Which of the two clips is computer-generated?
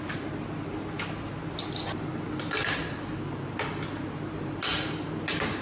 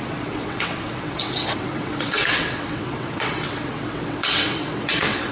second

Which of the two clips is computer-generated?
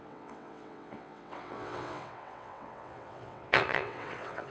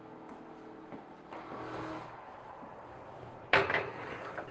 first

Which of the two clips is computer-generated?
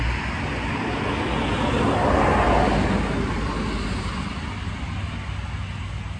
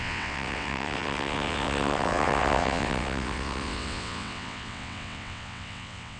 second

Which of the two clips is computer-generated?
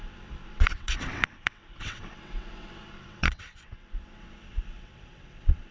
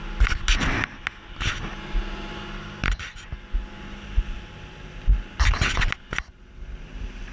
first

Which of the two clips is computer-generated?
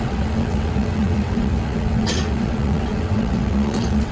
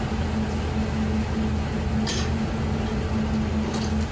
first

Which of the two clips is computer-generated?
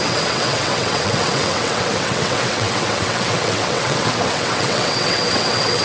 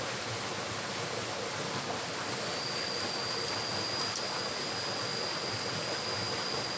first